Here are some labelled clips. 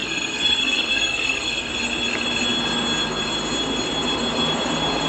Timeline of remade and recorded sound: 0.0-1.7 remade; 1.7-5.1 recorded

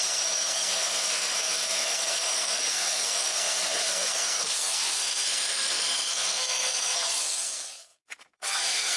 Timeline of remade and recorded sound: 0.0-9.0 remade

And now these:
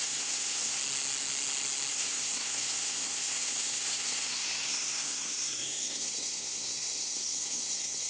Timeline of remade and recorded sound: 0.0-0.8 remade; 0.8-1.9 recorded; 1.9-8.1 remade

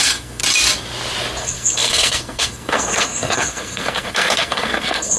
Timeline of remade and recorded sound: 0.0-0.4 remade; 0.4-1.4 recorded; 1.4-5.2 remade